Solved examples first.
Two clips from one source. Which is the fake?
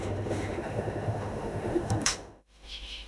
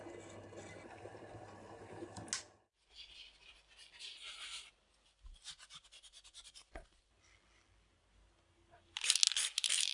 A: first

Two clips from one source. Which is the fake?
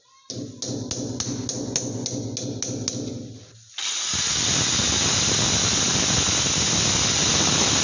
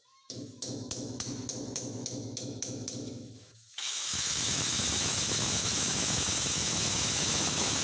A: second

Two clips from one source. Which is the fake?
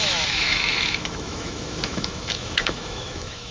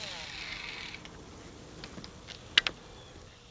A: first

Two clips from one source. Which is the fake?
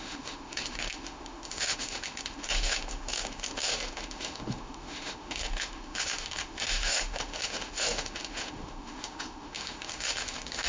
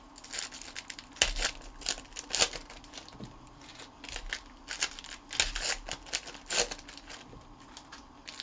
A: first